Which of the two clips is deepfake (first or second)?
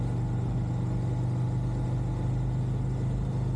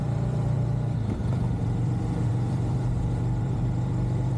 second